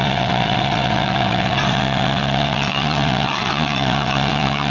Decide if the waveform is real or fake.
fake